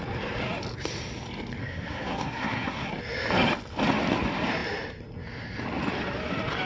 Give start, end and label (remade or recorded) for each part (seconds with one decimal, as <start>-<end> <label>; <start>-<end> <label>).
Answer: 0.0-1.6 recorded; 1.6-2.9 remade; 2.9-6.7 recorded